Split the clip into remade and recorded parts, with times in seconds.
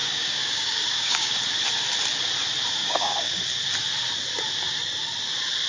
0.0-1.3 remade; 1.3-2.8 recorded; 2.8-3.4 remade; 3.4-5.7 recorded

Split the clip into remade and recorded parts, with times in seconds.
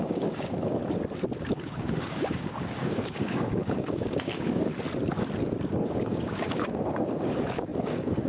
0.0-0.8 remade; 0.8-1.4 recorded; 1.4-4.7 remade; 4.7-5.8 recorded; 5.8-8.3 remade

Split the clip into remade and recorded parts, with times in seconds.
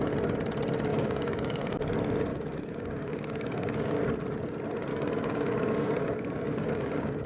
0.0-0.9 recorded; 0.9-1.8 remade; 1.8-2.3 recorded; 2.3-4.0 remade; 4.0-4.9 recorded; 4.9-7.3 remade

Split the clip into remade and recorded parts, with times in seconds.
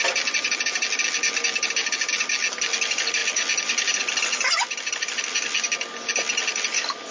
0.0-7.1 recorded